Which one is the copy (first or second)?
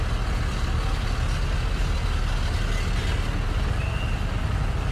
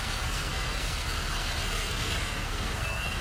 second